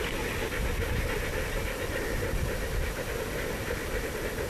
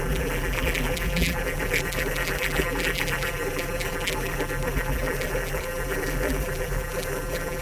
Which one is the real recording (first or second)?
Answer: first